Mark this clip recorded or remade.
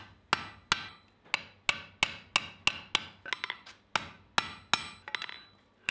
recorded